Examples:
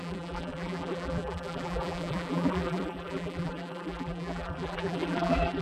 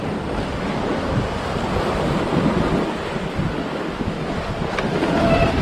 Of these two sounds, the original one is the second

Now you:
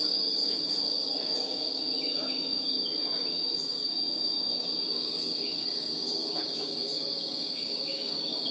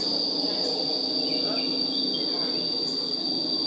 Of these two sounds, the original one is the second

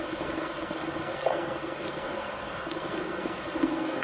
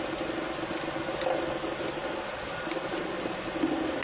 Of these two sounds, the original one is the second